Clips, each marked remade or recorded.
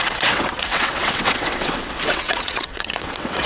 remade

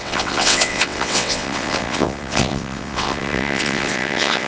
remade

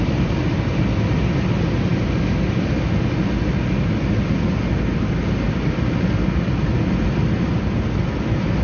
recorded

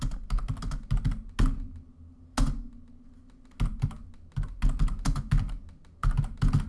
recorded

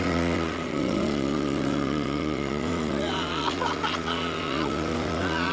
remade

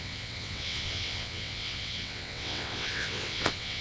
remade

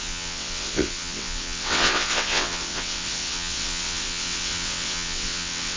remade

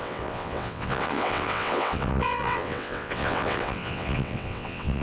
remade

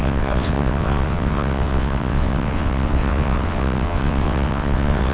remade